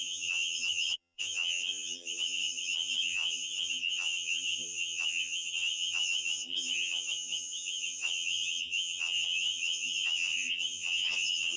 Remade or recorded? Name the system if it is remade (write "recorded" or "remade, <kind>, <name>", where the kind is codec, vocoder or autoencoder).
remade, vocoder, HiFi-GAN